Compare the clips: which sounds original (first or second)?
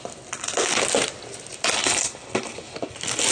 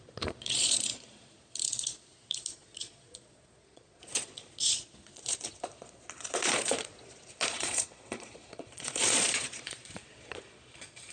first